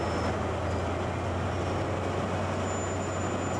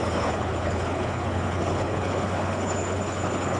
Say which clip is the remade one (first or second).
second